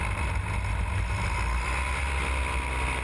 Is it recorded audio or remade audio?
recorded